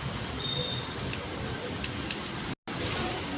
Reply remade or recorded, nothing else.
recorded